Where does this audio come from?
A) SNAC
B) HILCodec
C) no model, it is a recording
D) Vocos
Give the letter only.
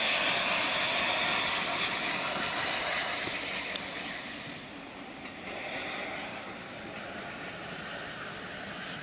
C